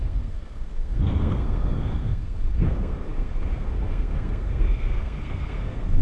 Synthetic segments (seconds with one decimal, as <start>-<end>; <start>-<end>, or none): 0.0-6.0